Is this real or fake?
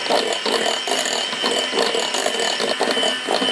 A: real